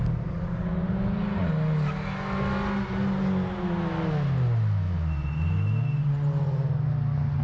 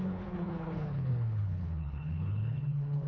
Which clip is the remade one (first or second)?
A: second